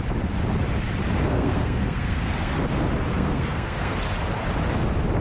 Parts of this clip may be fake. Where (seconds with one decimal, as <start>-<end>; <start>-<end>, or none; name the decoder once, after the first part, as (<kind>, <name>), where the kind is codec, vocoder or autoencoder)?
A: 1.2-2.5 (codec, SNAC); 3.1-4.0